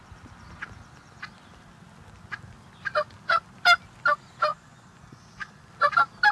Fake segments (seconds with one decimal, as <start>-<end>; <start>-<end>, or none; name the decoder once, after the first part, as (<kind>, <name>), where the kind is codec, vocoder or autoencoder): 4.5-5.7 (vocoder, Vocos)